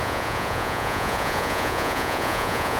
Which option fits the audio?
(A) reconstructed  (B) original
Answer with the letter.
A